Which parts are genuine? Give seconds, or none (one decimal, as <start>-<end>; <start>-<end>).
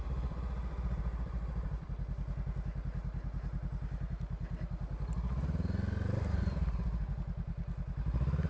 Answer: 0.0-8.5